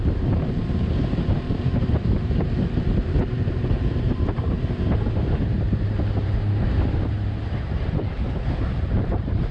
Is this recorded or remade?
remade